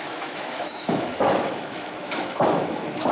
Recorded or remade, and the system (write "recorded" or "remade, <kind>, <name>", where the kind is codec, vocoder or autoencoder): remade, autoencoder, DAC-VAE